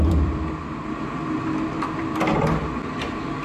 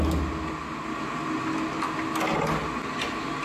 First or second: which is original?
second